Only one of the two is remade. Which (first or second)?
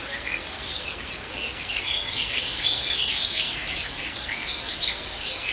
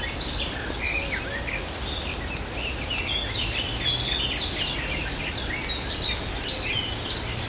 first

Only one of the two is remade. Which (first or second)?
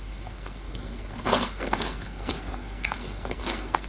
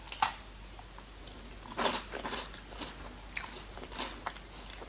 first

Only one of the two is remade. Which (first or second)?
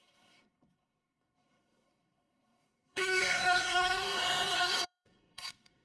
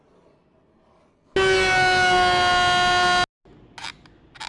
first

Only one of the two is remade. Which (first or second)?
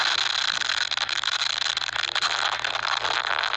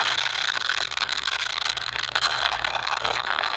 second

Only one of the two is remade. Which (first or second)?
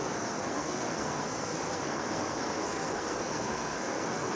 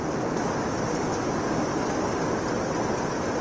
first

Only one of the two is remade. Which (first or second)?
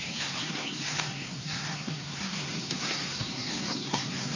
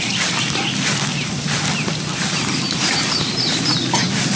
first